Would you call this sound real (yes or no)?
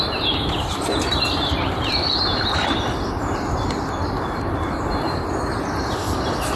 no